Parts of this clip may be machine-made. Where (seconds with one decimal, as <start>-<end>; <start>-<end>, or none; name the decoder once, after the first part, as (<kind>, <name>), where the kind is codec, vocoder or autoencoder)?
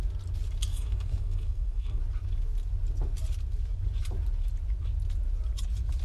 0.7-2.0 (codec, SNAC)